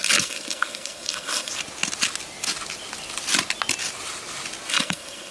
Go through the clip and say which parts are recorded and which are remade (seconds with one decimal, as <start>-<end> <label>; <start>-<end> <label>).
0.0-1.5 remade; 1.5-4.7 recorded; 4.7-5.3 remade

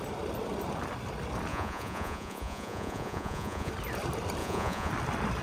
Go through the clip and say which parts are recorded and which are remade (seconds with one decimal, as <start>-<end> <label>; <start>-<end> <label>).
0.0-1.5 recorded; 1.5-3.7 remade; 3.7-4.4 recorded; 4.4-4.9 remade; 4.9-5.4 recorded

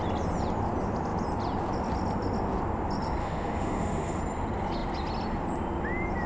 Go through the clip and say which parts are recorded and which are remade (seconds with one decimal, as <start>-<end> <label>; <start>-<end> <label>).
0.0-3.2 recorded; 3.2-4.2 remade; 4.2-6.3 recorded

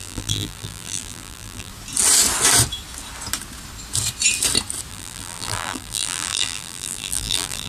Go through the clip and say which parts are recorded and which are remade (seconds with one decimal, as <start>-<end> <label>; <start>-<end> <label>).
0.0-1.7 remade; 1.7-4.9 recorded; 4.9-7.7 remade

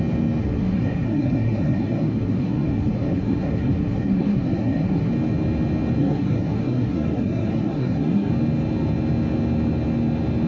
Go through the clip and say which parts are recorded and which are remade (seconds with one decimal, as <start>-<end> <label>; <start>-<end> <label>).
0.0-0.4 recorded; 0.4-5.1 remade; 5.1-6.0 recorded; 6.0-8.3 remade; 8.3-10.5 recorded

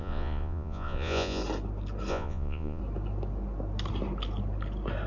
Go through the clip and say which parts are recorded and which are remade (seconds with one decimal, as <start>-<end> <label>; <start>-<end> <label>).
0.0-1.4 remade; 1.4-2.1 recorded; 2.1-2.8 remade; 2.8-5.1 recorded

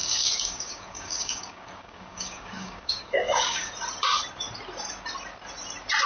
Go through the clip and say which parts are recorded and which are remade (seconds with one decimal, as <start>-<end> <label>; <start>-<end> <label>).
0.0-3.7 remade; 3.7-6.1 recorded